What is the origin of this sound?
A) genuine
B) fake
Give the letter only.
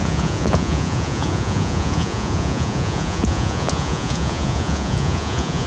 B